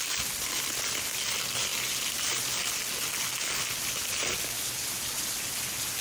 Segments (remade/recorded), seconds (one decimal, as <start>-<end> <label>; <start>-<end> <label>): 0.0-6.0 recorded